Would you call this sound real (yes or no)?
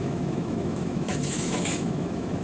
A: no